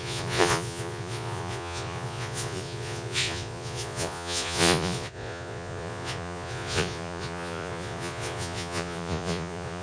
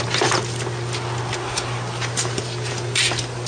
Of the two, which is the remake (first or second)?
first